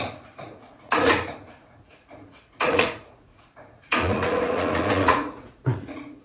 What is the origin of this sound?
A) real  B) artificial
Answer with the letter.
B